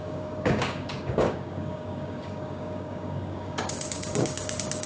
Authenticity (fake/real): fake